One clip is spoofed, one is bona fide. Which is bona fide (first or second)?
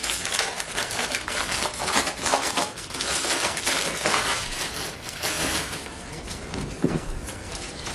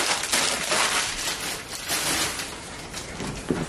second